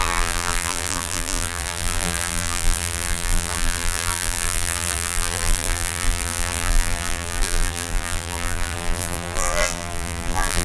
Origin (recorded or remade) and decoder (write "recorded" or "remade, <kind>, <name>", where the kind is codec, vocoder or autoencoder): remade, vocoder, BigVGAN v2